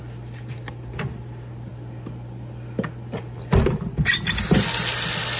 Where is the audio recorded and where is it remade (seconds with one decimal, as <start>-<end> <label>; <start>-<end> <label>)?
0.0-5.4 recorded